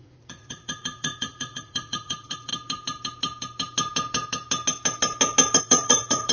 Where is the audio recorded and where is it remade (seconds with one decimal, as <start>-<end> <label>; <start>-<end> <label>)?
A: 0.0-2.5 remade; 2.5-5.6 recorded; 5.6-6.3 remade